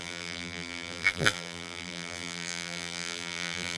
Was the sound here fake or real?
fake